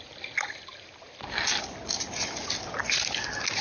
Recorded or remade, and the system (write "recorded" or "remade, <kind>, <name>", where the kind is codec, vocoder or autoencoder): recorded